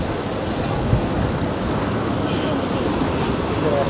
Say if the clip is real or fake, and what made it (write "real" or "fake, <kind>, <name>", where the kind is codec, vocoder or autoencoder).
real